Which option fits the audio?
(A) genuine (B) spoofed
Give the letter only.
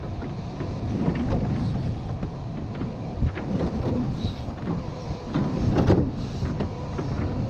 A